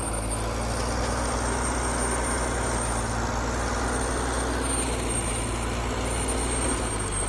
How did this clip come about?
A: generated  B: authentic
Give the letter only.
B